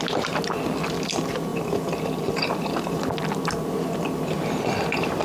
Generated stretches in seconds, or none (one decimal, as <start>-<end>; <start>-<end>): 1.5-3.0